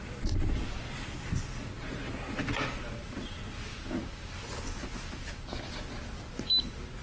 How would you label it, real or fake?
real